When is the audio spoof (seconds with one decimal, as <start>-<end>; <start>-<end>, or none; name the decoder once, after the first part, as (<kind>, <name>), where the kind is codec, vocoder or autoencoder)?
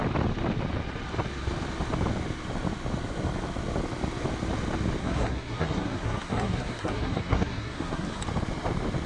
5.0-8.2 (codec, SNAC)